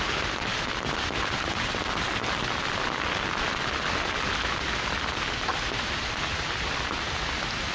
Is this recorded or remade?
recorded